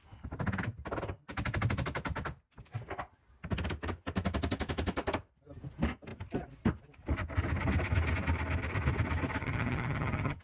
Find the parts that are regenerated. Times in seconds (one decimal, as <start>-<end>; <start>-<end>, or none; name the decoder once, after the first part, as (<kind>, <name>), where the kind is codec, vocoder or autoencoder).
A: 9.4-10.4 (vocoder, HiFi-GAN)